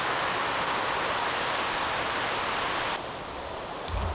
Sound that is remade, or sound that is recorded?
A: recorded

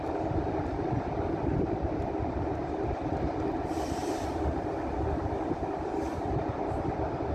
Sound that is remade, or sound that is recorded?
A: remade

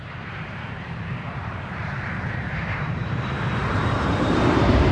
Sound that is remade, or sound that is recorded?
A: remade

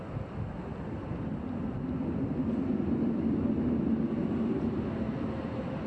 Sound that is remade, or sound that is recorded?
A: recorded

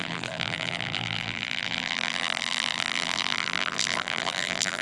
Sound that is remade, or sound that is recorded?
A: remade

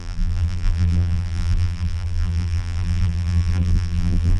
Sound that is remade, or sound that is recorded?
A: remade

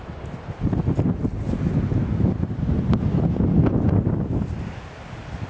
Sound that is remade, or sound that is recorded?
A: recorded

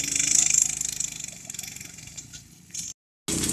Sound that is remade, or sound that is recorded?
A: recorded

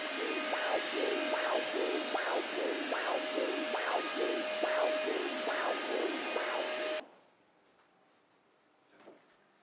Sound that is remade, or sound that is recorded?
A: recorded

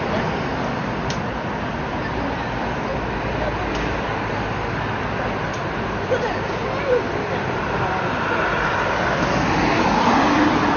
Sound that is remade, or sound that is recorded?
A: recorded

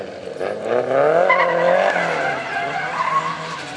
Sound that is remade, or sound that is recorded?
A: recorded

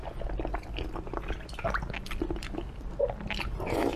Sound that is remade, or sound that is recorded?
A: recorded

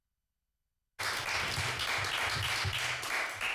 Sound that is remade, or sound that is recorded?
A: recorded